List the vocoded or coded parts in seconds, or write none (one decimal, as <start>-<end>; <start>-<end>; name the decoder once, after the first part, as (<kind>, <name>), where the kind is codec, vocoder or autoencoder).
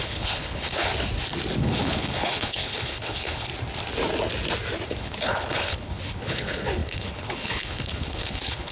0.0-0.9 (codec, HILCodec); 1.6-3.5; 5.0-8.7